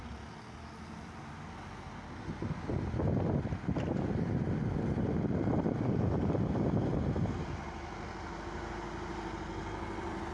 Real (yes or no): yes